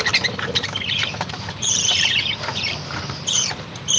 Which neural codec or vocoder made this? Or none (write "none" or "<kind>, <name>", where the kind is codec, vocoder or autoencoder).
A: vocoder, BigVGAN v2